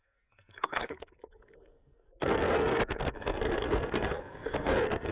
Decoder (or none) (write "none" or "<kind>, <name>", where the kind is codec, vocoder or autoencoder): codec, SNAC